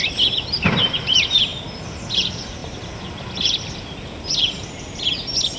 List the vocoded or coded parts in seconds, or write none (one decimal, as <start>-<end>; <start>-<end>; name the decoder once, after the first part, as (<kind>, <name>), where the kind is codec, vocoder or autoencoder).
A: 0.0-1.5 (vocoder, BigVGAN v2); 2.1-5.6